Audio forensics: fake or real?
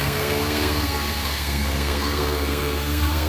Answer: fake